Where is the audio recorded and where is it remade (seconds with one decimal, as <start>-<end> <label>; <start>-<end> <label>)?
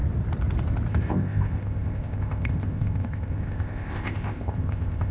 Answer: 0.0-0.9 recorded; 0.9-5.1 remade